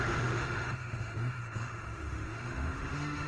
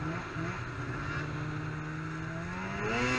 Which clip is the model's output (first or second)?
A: first